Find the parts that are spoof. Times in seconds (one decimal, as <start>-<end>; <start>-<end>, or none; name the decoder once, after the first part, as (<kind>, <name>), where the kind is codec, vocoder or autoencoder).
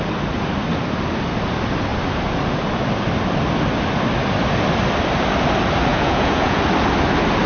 5.9-6.6 (vocoder, Vocos)